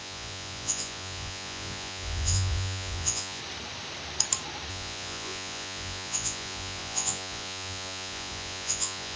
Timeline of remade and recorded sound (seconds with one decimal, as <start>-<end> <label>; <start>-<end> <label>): 0.0-3.4 remade; 3.4-4.7 recorded; 4.7-9.2 remade